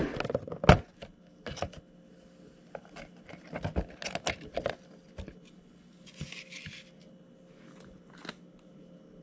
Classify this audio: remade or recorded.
recorded